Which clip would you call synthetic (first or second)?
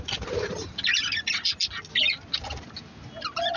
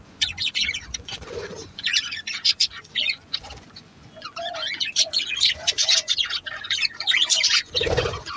second